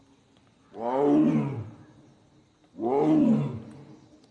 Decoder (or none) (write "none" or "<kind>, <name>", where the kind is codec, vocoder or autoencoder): none